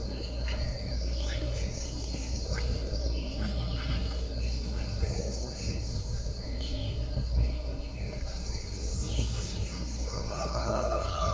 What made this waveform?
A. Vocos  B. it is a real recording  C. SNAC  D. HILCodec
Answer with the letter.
C